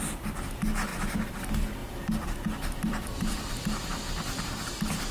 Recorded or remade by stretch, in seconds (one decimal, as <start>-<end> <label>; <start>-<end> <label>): 0.0-0.9 recorded; 0.9-1.4 remade; 1.4-1.8 recorded; 1.8-3.5 remade; 3.5-5.1 recorded